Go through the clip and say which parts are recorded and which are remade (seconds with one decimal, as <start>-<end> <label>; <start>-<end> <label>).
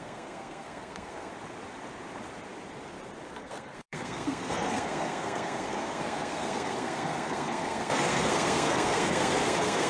0.0-1.3 remade; 1.3-3.3 recorded; 3.3-9.9 remade